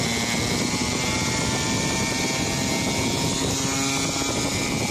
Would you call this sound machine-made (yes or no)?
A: no